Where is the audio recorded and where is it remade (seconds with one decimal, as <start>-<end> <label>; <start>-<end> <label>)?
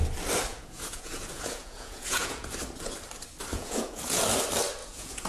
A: 0.0-0.5 recorded; 0.5-2.5 remade; 2.5-3.5 recorded; 3.5-4.2 remade; 4.2-4.8 recorded; 4.8-5.3 remade